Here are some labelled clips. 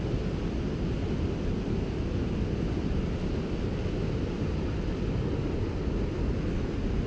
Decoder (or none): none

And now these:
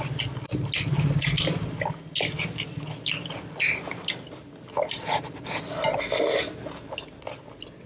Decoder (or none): none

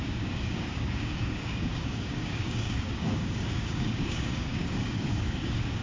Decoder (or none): codec, DAC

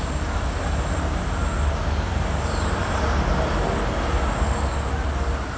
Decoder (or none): none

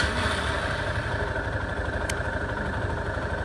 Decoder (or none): none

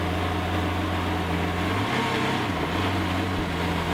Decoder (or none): none